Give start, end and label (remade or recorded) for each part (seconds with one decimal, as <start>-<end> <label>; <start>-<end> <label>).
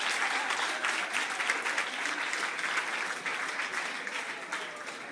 0.0-5.1 recorded